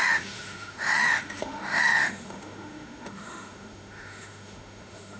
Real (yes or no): no